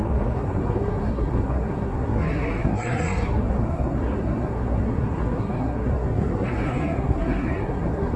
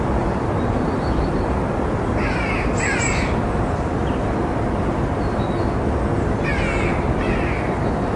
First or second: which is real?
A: second